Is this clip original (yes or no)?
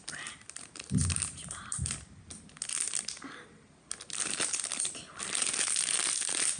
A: yes